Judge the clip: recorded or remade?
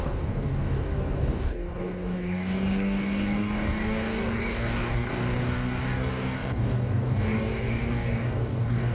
remade